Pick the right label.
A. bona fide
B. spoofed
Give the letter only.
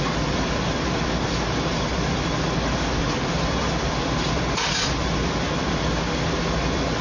B